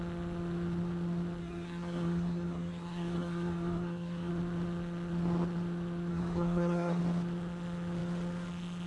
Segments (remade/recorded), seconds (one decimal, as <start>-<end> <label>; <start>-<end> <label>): 0.0-1.4 recorded; 1.4-4.3 remade; 4.3-6.1 recorded; 6.1-7.0 remade; 7.0-8.9 recorded